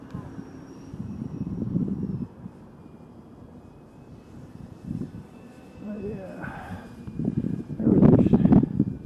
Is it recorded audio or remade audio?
remade